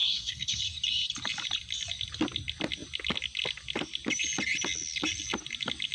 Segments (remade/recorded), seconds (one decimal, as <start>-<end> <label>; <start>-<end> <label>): 0.0-0.6 remade; 0.6-5.9 recorded